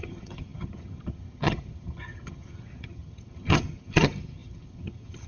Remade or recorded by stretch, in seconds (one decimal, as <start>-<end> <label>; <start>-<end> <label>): 0.0-5.3 remade